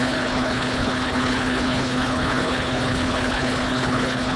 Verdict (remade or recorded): remade